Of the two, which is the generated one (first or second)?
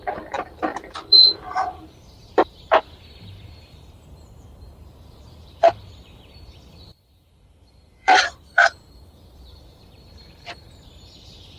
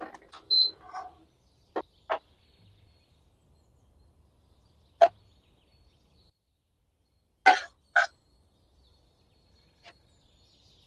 first